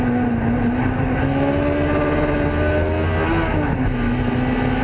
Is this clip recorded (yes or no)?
yes